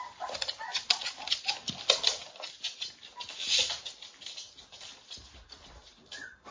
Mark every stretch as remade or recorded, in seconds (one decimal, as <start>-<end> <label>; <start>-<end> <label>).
0.0-6.5 recorded